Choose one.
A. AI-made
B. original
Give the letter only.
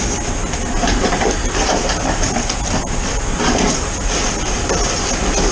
B